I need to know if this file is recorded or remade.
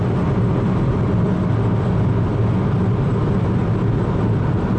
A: recorded